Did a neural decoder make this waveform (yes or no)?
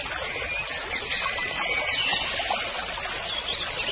no